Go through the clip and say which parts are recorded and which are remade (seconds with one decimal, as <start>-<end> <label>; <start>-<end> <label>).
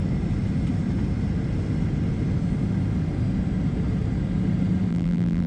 0.0-4.9 recorded; 4.9-5.5 remade